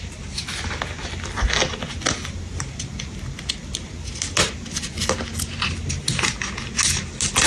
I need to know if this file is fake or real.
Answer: real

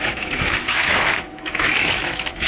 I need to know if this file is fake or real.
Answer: fake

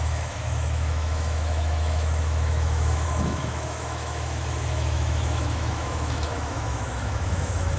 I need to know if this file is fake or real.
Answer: fake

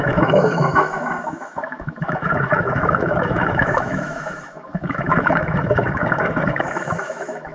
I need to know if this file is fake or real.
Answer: fake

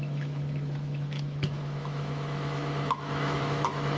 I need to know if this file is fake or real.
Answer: fake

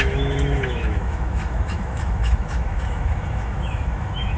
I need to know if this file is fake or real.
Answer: fake